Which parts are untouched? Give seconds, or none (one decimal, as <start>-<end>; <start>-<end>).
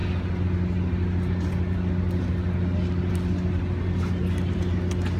0.0-5.2